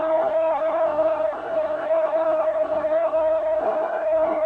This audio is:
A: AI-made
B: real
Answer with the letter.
A